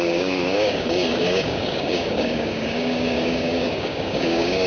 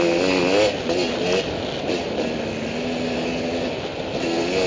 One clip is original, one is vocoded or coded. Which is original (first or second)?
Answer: second